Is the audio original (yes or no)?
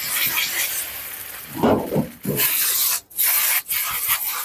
yes